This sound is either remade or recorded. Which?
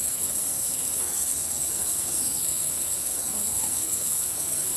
remade